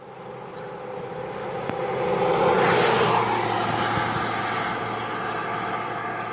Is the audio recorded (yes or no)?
yes